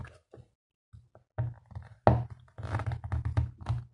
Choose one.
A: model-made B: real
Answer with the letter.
B